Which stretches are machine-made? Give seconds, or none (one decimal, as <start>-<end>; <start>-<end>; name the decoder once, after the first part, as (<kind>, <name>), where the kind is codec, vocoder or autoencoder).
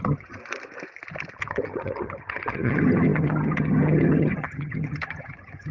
0.0-0.4 (vocoder, HiFi-GAN); 1.4-5.7